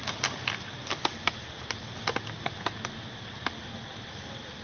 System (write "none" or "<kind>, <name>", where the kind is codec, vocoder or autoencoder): none